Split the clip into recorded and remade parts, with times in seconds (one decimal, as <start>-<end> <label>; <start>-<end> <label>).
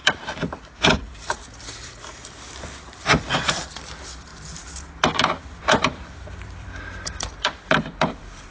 0.0-4.3 remade; 4.3-5.4 recorded; 5.4-8.5 remade